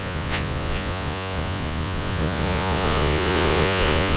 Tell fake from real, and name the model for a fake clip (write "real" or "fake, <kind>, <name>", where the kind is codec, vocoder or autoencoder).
fake, vocoder, Vocos